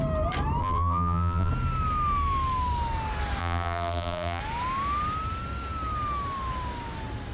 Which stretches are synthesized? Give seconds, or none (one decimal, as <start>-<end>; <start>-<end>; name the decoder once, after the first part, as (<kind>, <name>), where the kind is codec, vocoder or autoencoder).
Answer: 0.6-1.5 (vocoder, BigVGAN v2); 3.4-4.4